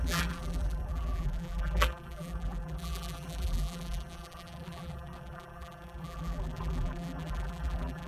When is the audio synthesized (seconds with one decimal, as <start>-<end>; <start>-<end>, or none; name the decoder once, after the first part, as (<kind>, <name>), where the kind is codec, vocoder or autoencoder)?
0.0-8.1 (vocoder, BigVGAN v2)